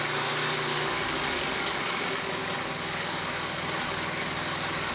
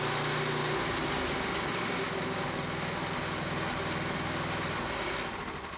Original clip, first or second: second